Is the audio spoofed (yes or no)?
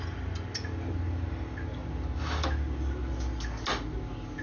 no